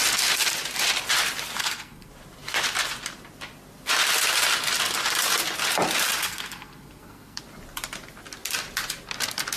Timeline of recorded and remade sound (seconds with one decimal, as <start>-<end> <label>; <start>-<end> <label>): 0.0-1.6 recorded; 1.6-2.1 remade; 2.1-6.2 recorded; 6.2-7.4 remade; 7.4-9.6 recorded